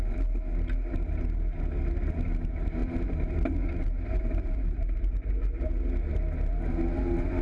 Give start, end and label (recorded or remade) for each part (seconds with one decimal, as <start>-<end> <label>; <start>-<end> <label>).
0.0-2.8 recorded; 2.8-5.3 remade; 5.3-7.4 recorded